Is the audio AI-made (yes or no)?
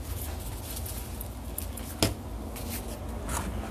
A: no